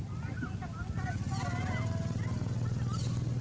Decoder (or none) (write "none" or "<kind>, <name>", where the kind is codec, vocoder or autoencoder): none